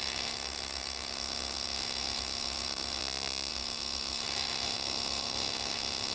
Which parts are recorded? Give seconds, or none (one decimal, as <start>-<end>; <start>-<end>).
3.0-3.5